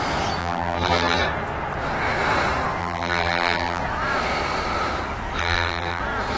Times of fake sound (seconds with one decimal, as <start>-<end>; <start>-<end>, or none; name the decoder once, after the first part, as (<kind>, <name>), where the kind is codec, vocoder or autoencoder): 0.4-1.2 (vocoder, BigVGAN v2); 2.8-3.8; 5.4-6.0